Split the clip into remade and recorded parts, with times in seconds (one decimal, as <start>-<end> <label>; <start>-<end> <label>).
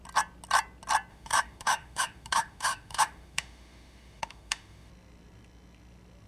0.0-1.1 recorded; 1.1-4.9 remade; 4.9-6.3 recorded